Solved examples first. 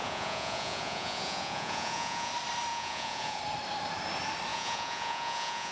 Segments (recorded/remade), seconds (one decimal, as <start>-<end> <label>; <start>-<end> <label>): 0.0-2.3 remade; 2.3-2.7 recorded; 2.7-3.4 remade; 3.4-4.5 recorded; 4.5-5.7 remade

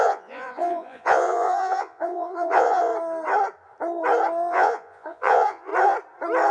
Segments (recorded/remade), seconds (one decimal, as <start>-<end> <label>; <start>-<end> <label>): 0.0-2.9 remade; 2.9-4.5 recorded; 4.5-5.7 remade; 5.7-6.5 recorded

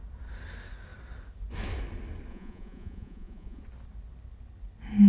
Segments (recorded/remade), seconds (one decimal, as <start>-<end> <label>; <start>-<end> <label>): 0.0-2.3 recorded; 2.3-3.6 remade; 3.6-5.1 recorded

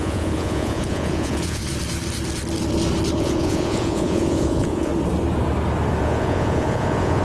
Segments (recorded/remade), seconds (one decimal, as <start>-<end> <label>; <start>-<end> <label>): 0.0-1.6 remade; 1.6-3.2 recorded; 3.2-4.9 remade; 4.9-6.0 recorded; 6.0-7.2 remade

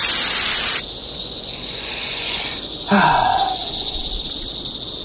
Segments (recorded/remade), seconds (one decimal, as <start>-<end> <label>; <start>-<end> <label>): 0.0-1.0 recorded; 1.0-4.0 remade; 4.0-5.0 recorded

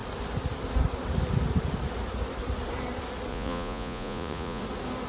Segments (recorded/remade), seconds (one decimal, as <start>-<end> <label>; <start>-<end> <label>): 0.0-3.3 recorded; 3.3-4.6 remade; 4.6-5.1 recorded